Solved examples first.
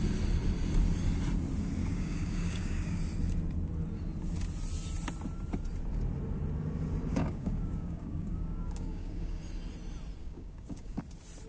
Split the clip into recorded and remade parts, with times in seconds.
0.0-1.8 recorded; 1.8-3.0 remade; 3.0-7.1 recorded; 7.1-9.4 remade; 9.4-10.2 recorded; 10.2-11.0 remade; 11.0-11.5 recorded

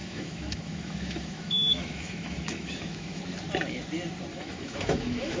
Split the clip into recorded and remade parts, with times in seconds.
0.0-3.2 remade; 3.2-4.3 recorded; 4.3-5.4 remade